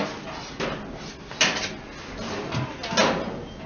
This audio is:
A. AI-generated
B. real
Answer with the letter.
B